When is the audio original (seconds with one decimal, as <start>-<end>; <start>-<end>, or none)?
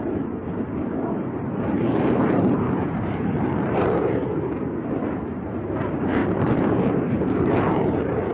4.3-5.1